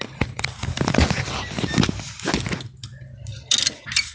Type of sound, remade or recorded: recorded